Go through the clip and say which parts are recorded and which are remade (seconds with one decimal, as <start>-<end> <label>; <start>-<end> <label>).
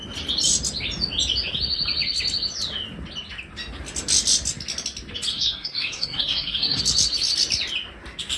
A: 0.0-5.3 recorded; 5.3-6.8 remade; 6.8-8.4 recorded